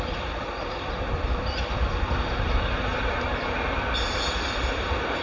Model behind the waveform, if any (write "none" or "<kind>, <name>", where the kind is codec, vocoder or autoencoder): none